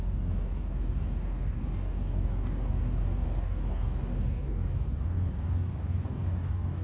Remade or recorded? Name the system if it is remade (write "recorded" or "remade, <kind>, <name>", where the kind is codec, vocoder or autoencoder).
remade, codec, DAC